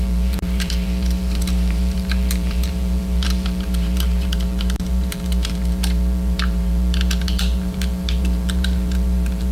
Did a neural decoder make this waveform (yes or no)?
yes